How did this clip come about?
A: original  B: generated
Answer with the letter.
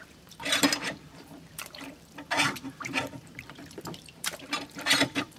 B